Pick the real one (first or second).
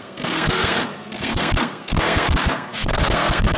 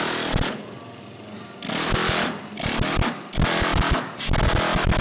second